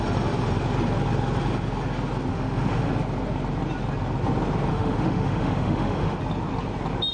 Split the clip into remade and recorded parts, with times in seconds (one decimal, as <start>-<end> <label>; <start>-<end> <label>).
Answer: 0.0-2.3 recorded; 2.3-2.9 remade; 2.9-4.7 recorded; 4.7-6.2 remade; 6.2-7.1 recorded